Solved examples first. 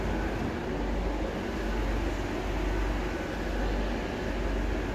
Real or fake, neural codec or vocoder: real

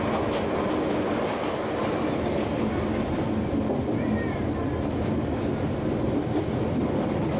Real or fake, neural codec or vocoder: real